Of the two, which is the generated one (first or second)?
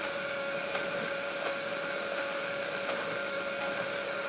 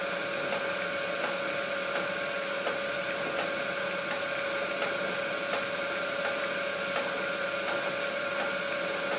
first